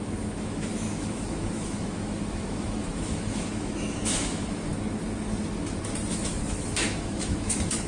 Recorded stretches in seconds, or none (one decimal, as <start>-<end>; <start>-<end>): 4.7-6.1